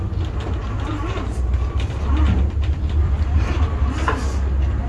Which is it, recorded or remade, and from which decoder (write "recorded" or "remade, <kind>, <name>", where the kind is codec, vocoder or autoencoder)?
recorded